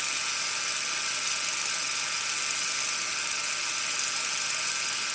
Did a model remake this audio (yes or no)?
no